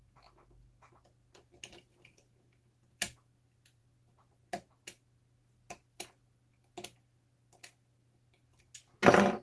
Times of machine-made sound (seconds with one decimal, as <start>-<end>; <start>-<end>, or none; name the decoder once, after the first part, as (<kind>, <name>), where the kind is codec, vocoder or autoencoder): none